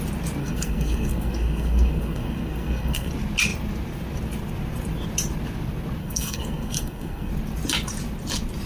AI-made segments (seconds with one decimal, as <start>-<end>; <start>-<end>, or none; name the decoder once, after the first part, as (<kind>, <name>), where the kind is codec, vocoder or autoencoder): 0.4-3.1 (codec, SNAC); 6.0-7.3